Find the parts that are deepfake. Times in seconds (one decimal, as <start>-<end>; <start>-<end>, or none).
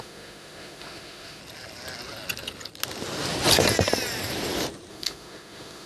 0.0-1.4; 4.9-5.9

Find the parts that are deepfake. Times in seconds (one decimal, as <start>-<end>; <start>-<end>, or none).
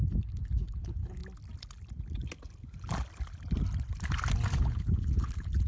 0.0-1.2; 4.6-5.7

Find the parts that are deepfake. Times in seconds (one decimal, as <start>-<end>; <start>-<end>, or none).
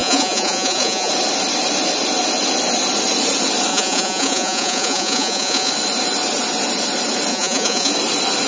0.0-1.1; 3.7-5.7; 7.3-7.9